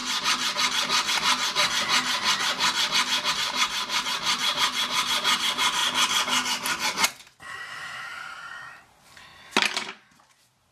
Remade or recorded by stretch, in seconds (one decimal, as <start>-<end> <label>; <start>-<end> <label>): 0.0-3.3 recorded; 3.3-5.8 remade; 5.8-7.4 recorded; 7.4-9.3 remade; 9.3-9.9 recorded; 9.9-10.7 remade